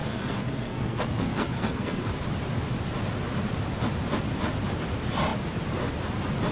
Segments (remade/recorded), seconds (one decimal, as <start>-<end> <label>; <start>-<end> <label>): 0.0-2.1 remade; 2.1-6.5 recorded